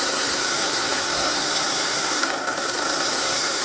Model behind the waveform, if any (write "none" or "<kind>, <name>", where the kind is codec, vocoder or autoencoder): codec, SNAC